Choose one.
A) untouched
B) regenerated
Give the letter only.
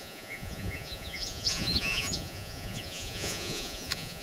B